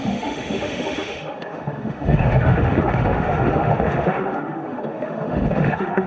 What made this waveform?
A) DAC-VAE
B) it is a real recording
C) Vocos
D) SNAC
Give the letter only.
A